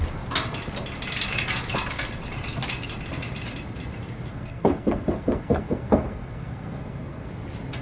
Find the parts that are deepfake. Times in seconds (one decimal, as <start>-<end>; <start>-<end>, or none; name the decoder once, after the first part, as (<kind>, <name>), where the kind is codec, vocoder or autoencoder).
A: 4.3-7.3 (codec, SNAC)